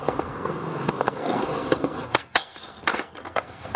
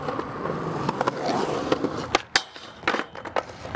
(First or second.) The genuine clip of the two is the second